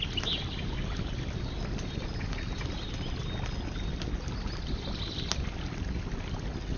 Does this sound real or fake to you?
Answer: real